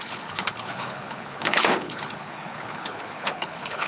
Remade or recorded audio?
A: remade